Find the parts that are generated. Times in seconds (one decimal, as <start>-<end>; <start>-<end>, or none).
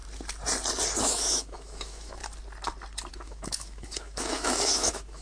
1.0-2.2; 3.1-5.2